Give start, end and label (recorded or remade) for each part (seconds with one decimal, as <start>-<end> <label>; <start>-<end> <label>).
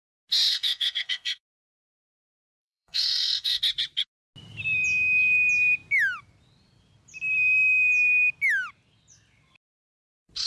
0.0-0.5 recorded; 0.5-1.4 remade; 1.4-2.1 recorded; 2.1-3.6 remade; 3.6-10.5 recorded